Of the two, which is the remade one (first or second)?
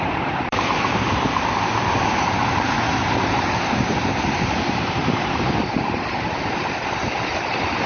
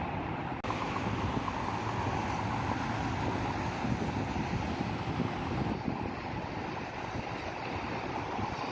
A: first